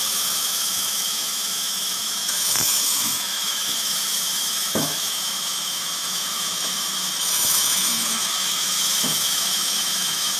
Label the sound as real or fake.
fake